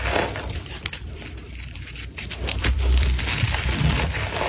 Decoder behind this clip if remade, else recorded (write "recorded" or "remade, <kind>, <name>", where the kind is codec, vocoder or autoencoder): remade, vocoder, BigVGAN v2